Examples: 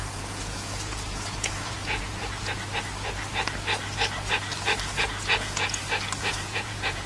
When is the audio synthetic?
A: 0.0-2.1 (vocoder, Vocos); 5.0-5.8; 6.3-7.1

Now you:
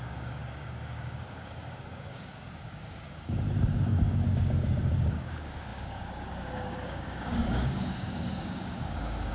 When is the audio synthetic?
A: 0.0-9.3 (codec, DAC)

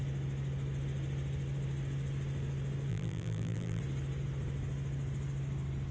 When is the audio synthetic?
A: 2.9-3.8 (vocoder, BigVGAN v2)

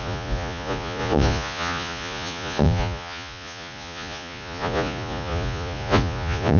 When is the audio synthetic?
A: 0.0-6.6 (vocoder, Vocos)